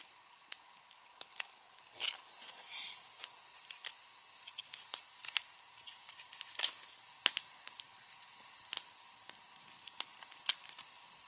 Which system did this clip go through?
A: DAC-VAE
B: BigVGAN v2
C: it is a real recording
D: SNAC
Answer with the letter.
C